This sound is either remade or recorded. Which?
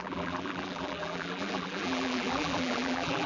remade